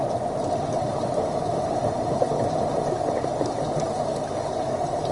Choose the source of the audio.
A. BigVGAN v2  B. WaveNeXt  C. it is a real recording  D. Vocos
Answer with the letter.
C